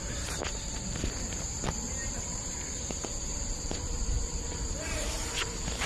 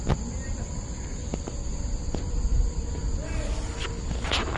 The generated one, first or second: first